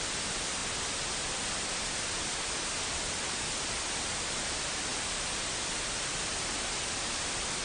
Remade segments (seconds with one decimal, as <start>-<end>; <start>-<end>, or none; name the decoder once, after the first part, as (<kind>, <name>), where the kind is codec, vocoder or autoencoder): none